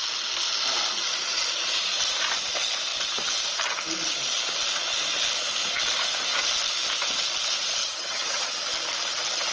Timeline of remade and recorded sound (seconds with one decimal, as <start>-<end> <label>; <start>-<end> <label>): 0.0-7.8 recorded; 7.8-8.5 remade; 8.5-9.5 recorded